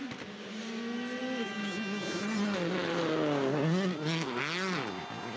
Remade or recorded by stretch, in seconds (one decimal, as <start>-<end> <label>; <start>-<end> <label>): 0.0-5.4 recorded